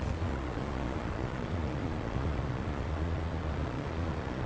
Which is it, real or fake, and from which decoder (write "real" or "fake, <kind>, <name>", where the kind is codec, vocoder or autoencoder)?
fake, vocoder, Vocos